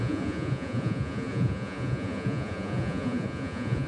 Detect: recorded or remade remade